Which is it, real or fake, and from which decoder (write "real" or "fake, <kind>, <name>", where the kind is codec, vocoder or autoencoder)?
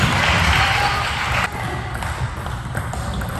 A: real